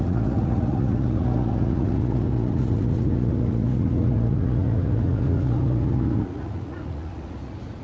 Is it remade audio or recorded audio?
remade